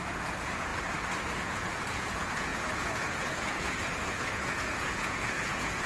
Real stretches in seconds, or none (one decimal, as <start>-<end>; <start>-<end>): 0.7-1.4